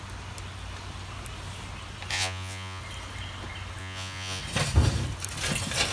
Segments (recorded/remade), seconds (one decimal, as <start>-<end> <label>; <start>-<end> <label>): 0.0-2.1 recorded; 2.1-2.8 remade; 2.8-3.8 recorded; 3.8-4.4 remade; 4.4-5.9 recorded